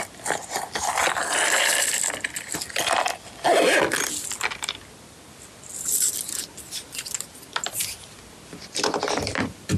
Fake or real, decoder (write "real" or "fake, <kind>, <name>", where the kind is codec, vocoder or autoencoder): real